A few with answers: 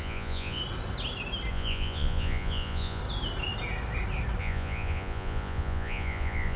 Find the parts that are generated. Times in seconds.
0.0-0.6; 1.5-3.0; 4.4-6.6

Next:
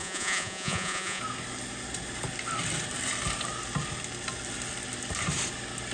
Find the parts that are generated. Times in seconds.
0.0-1.2

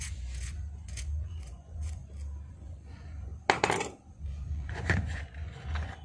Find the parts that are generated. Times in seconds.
0.0-2.0; 2.5-3.3; 4.1-6.0

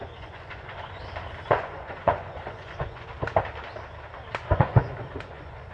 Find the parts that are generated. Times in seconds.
0.0-1.0; 1.5-3.1; 4.3-5.7